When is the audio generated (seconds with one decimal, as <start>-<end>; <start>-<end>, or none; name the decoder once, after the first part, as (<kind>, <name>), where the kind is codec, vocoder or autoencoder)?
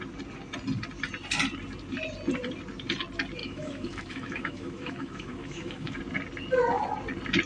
3.4-6.0 (autoencoder, DAC-VAE)